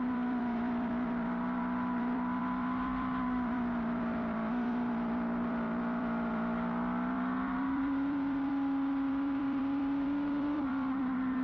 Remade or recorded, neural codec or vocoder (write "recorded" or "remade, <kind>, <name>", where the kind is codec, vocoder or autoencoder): remade, vocoder, BigVGAN v2